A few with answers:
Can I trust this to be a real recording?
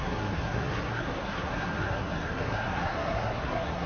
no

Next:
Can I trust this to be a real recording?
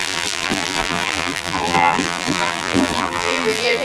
no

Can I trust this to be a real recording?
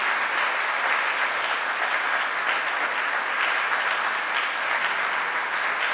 yes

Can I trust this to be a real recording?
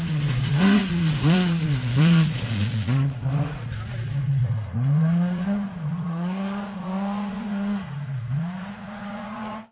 no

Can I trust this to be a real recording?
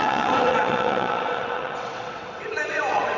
no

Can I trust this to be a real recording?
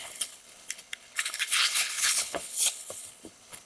no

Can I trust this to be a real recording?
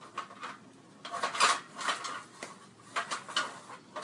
yes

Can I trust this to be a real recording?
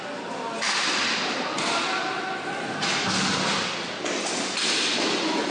yes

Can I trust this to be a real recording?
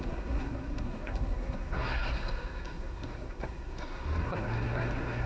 no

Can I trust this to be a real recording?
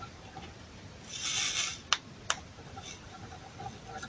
yes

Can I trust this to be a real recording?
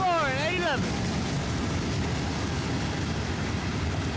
yes